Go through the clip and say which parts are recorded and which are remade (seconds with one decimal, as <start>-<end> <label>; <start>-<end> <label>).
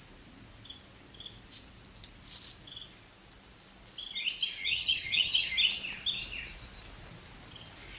0.0-4.6 recorded; 4.6-5.5 remade; 5.5-8.0 recorded